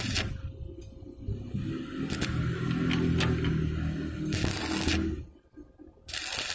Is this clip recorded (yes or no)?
yes